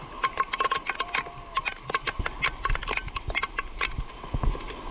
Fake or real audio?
real